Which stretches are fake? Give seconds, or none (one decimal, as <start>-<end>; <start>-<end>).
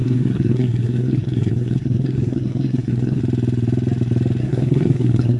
0.0-3.2; 4.4-5.4